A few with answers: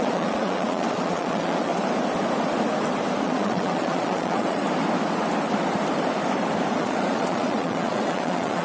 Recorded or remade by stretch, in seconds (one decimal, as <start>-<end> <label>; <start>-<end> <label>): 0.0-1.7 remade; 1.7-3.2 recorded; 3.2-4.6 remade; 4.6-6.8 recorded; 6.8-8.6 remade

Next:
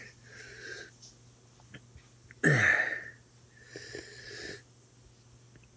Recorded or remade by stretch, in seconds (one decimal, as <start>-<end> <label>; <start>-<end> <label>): 0.0-5.8 recorded

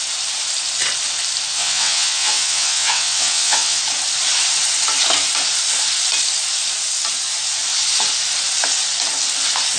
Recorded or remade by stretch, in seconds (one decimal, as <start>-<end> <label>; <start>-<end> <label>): 0.0-1.5 recorded; 1.5-3.8 remade; 3.8-9.8 recorded

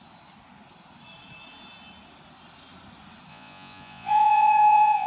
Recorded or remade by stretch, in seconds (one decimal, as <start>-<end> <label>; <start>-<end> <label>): 0.0-3.3 recorded; 3.3-5.1 remade